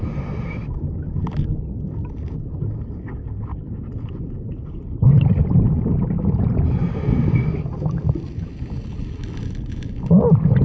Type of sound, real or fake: real